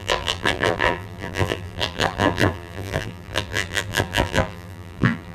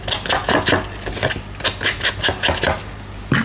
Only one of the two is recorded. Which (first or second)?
second